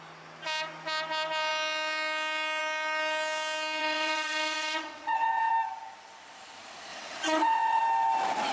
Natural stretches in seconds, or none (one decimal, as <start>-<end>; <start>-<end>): 0.0-3.8; 5.5-6.9; 7.8-8.5